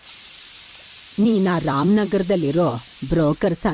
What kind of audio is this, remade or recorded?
remade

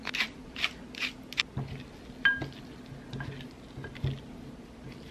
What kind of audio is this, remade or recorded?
recorded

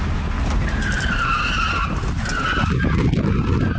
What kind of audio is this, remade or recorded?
recorded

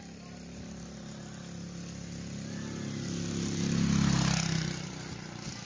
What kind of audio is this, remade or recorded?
recorded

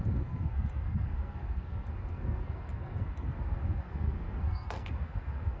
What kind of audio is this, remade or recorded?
remade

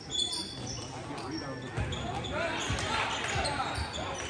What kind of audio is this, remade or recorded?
recorded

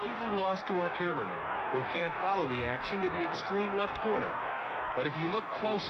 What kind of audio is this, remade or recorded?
remade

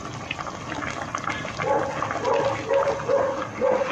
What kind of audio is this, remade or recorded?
recorded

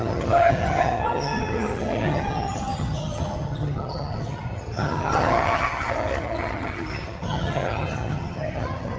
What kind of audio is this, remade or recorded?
remade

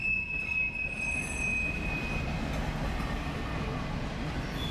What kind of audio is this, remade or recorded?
recorded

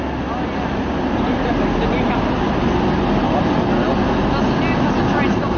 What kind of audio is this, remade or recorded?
recorded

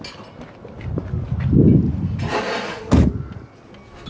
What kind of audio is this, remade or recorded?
recorded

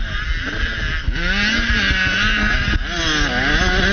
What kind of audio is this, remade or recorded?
recorded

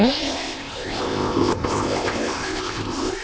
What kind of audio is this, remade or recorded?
remade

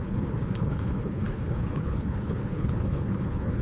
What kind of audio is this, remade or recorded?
remade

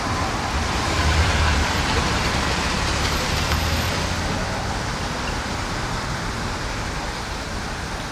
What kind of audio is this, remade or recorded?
remade